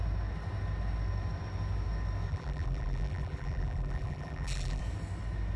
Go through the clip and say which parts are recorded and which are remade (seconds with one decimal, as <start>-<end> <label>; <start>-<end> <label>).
0.0-2.3 recorded; 2.3-4.8 remade; 4.8-5.6 recorded